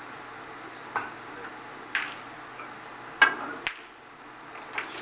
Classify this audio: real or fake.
real